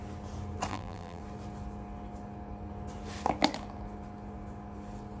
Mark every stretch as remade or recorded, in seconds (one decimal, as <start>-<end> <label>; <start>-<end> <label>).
0.0-0.7 recorded; 0.7-1.2 remade; 1.2-5.2 recorded

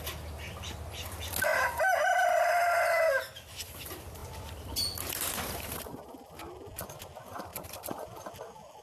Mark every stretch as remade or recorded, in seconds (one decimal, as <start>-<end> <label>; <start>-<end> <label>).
0.0-8.8 recorded